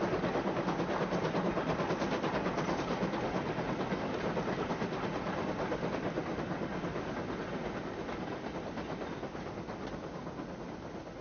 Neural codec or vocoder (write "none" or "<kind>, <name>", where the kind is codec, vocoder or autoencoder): none